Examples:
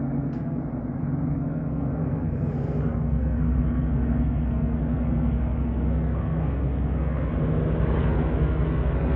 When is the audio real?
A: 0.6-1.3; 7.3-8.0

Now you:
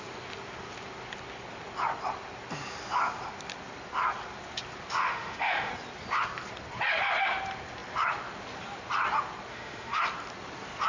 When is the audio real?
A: 0.0-5.0; 5.7-9.5; 10.0-10.9

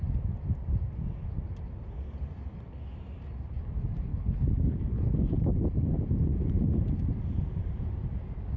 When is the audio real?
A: 0.0-4.1; 5.5-8.6

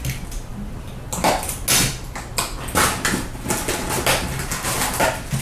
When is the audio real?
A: 0.0-5.4

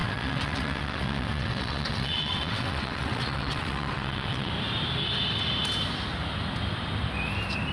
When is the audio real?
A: 4.5-7.7

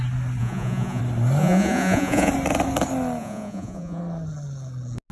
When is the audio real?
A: 0.0-0.4; 1.0-1.4; 2.3-3.2; 4.0-5.1

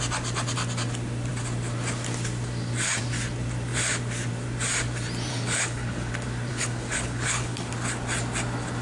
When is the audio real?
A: 0.0-5.3; 6.1-6.5; 7.7-8.8